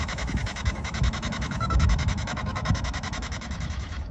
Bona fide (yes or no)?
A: no